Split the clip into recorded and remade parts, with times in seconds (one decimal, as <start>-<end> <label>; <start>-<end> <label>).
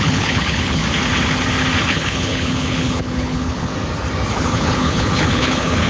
0.0-0.8 remade; 0.8-1.9 recorded; 1.9-3.7 remade; 3.7-4.3 recorded; 4.3-5.9 remade